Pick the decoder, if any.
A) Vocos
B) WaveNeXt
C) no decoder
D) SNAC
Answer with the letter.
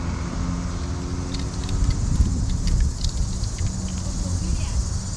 C